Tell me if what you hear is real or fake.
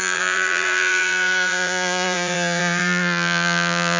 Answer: fake